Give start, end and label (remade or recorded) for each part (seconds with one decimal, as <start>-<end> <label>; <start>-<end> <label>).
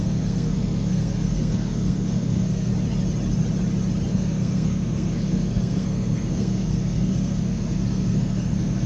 0.0-2.7 remade; 2.7-4.1 recorded; 4.1-8.9 remade